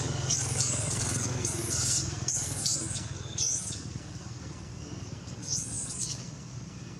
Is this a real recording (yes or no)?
no